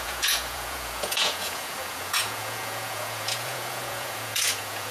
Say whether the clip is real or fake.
fake